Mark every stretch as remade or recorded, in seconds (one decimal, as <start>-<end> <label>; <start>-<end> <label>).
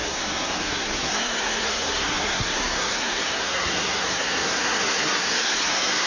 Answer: 0.0-6.1 remade